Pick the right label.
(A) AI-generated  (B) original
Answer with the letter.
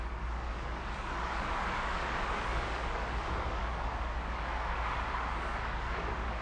A